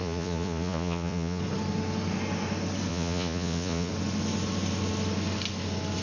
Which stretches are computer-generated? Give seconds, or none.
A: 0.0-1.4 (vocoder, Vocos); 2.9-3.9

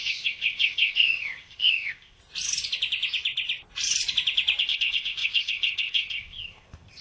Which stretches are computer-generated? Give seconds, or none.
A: 0.0-2.2 (codec, ZipCodec); 4.6-7.0

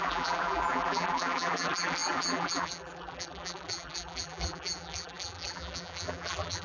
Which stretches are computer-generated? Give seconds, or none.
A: 0.0-6.6 (vocoder, BigVGAN v2)

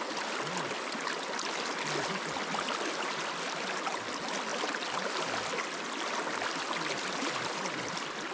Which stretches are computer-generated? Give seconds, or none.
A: none